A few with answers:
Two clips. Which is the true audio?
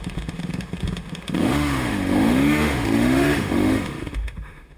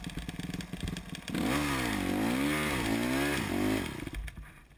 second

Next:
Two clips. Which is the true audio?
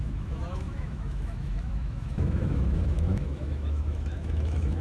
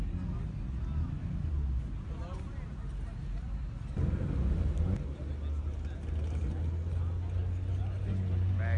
second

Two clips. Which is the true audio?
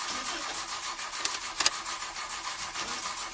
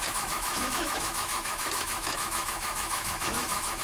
first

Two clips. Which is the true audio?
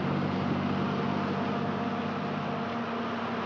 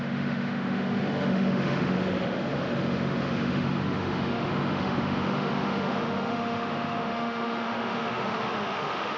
first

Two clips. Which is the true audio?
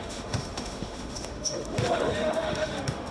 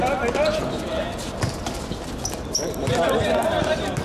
second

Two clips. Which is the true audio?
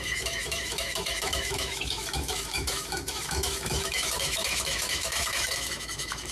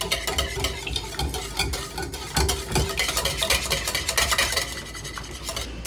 second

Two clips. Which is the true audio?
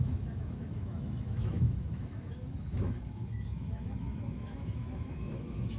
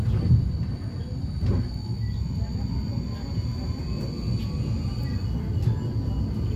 second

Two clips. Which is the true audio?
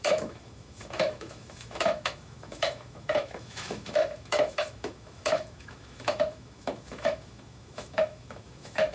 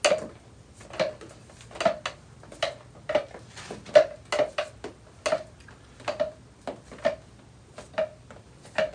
second